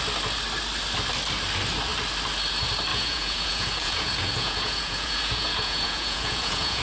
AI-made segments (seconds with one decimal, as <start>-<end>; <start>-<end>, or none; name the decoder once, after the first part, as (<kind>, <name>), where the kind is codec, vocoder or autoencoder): 2.9-6.8 (vocoder, Vocos)